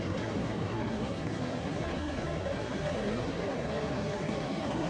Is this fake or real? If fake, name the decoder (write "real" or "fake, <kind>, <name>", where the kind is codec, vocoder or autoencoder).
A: fake, codec, SNAC